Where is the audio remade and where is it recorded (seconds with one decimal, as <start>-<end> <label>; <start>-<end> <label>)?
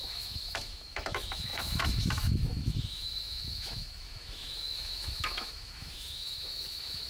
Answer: 0.0-7.1 remade